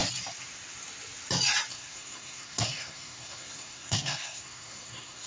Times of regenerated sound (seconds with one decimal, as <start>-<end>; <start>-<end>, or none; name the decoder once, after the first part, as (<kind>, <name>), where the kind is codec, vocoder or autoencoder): 1.7-5.3 (codec, SNAC)